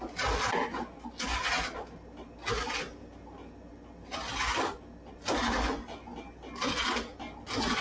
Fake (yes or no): no